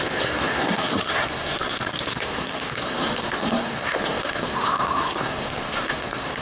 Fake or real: fake